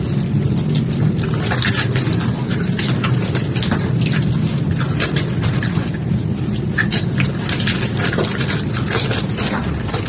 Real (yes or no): yes